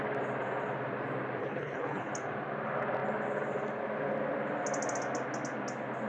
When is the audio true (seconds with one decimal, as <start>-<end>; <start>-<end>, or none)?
0.0-1.4; 2.1-6.1